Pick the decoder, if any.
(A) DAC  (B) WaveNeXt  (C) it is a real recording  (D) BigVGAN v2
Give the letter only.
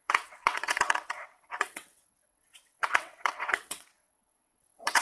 B